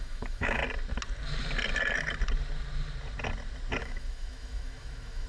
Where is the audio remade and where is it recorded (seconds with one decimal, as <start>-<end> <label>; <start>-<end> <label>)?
0.0-0.6 remade; 0.6-3.8 recorded; 3.8-5.3 remade